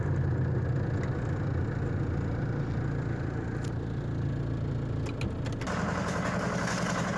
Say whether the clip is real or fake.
real